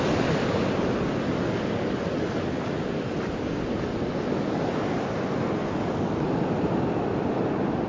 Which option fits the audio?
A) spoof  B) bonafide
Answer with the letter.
B